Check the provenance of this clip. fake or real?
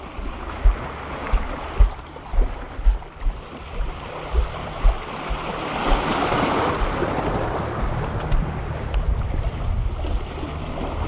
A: real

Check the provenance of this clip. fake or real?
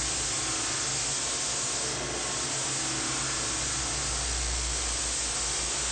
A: real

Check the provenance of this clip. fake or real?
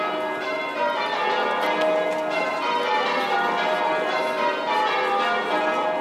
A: real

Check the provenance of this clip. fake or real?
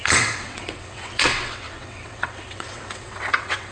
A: fake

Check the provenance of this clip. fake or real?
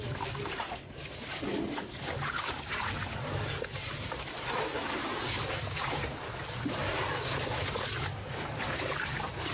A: real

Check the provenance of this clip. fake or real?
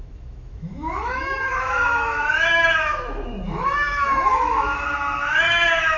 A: fake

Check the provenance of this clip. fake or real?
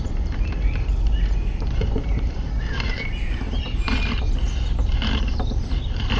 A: fake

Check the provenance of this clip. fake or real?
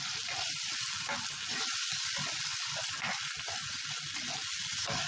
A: real